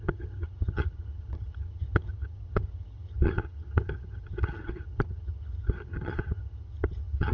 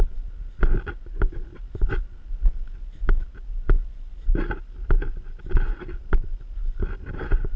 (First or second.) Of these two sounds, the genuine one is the second